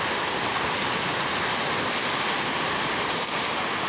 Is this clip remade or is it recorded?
recorded